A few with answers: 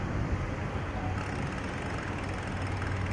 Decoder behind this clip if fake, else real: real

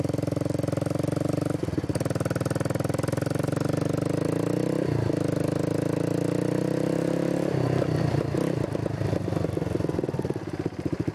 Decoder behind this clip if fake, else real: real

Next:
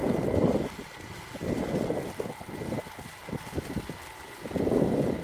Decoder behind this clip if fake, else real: real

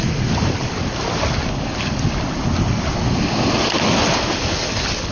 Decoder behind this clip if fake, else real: real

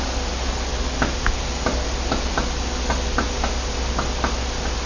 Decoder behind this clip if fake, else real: real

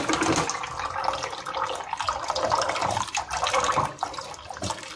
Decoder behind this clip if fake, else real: real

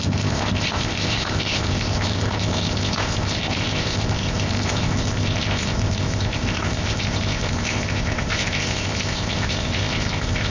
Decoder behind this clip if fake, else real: fake, codec, ZipCodec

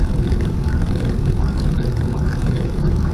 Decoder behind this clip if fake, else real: fake, codec, DAC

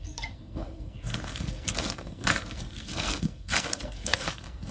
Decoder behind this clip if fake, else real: fake, codec, SNAC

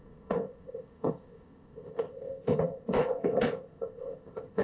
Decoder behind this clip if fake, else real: fake, codec, ZipCodec